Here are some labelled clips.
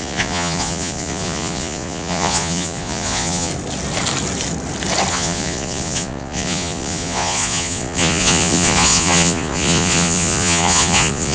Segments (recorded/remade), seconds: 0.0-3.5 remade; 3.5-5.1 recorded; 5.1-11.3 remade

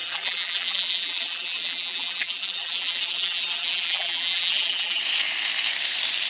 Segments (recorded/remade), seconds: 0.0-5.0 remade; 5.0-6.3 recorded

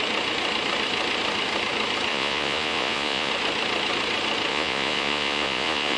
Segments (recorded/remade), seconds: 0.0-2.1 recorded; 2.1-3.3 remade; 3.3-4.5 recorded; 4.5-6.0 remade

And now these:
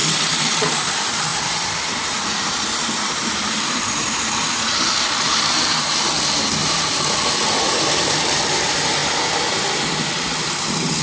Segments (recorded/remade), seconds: 0.0-0.8 remade; 0.8-1.3 recorded; 1.3-6.0 remade; 6.0-6.6 recorded; 6.6-7.1 remade; 7.1-11.0 recorded

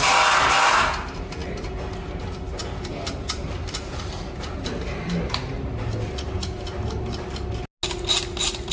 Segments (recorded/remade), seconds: 0.0-8.7 recorded